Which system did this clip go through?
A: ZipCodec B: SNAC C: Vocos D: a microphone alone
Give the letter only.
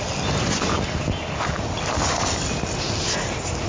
D